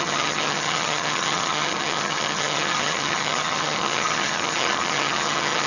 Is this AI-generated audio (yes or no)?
yes